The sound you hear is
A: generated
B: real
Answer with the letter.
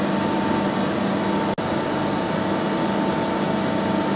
B